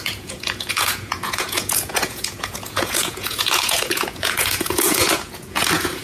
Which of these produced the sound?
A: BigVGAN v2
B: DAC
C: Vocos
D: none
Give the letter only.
C